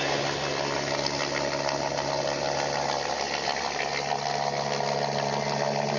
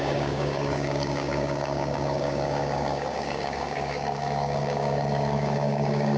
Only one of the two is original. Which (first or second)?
first